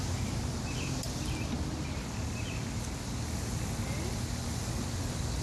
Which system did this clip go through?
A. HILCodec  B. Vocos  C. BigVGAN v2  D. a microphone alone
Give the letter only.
D